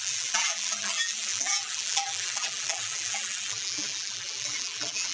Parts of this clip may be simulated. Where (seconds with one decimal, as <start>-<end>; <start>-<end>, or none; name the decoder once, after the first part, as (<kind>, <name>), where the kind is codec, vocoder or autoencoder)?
0.0-5.1 (vocoder, BigVGAN v2)